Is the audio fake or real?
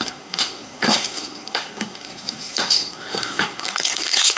fake